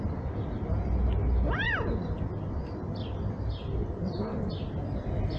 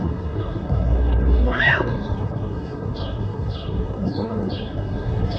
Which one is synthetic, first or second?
second